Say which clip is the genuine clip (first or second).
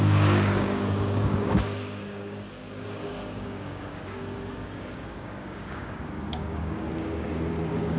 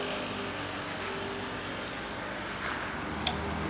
second